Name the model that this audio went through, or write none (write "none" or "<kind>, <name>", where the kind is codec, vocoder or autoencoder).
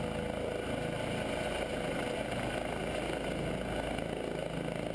none